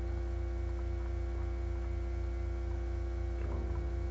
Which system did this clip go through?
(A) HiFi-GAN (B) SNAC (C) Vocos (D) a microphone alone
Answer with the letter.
D